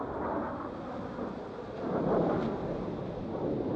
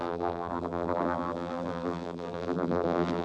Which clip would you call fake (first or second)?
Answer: second